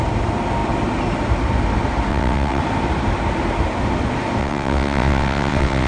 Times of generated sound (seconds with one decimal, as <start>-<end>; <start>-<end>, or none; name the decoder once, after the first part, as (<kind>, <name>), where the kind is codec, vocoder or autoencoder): 2.1-2.6 (vocoder, WaveNeXt); 4.4-5.9